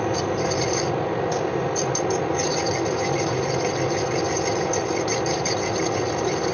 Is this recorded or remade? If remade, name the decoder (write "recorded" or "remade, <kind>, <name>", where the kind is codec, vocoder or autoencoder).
recorded